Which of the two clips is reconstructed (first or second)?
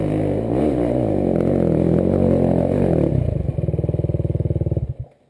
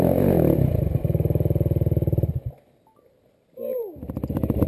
second